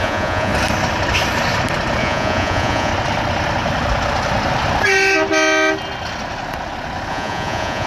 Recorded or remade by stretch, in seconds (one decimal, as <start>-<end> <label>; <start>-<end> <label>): 0.0-0.5 remade; 0.5-2.0 recorded; 2.0-2.9 remade; 2.9-7.1 recorded; 7.1-7.9 remade

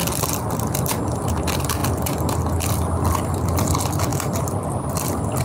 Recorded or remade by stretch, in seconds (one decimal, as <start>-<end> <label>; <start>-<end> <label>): 0.0-5.4 recorded